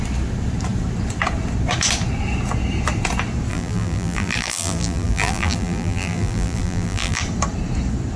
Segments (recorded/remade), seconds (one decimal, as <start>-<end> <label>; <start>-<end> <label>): 0.0-3.5 recorded; 3.5-7.2 remade; 7.2-8.2 recorded